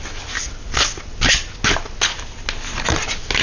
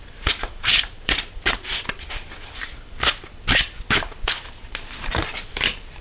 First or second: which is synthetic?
second